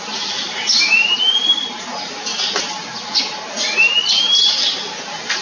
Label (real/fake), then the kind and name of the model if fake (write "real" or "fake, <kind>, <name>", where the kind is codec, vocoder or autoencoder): real